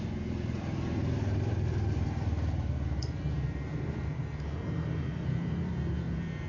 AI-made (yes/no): yes